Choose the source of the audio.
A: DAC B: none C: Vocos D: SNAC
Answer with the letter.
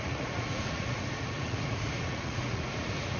C